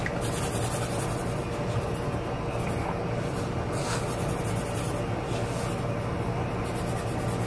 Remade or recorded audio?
recorded